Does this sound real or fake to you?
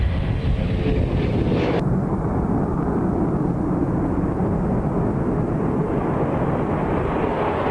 real